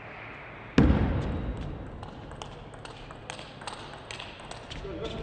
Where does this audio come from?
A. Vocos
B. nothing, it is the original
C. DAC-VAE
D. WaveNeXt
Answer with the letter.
B